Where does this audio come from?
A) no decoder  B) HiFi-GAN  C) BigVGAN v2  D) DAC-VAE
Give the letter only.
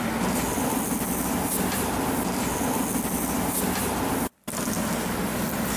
A